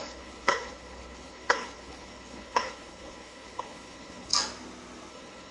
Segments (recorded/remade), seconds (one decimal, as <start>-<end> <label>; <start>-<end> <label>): 0.0-4.3 remade; 4.3-5.1 recorded; 5.1-5.5 remade